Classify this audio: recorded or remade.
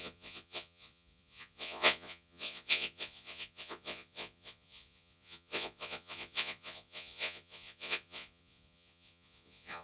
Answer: remade